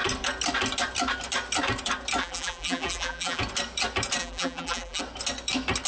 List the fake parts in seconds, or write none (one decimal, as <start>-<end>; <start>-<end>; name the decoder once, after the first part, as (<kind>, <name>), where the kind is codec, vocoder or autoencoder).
2.2-3.4 (vocoder, BigVGAN v2); 4.2-5.0